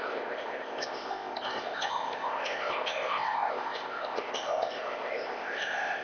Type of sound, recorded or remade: remade